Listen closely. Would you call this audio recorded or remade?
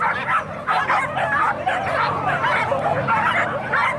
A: recorded